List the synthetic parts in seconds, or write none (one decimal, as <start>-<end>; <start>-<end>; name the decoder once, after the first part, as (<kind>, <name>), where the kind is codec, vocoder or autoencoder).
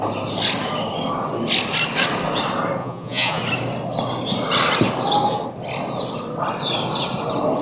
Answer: 2.8-3.4 (vocoder, Vocos)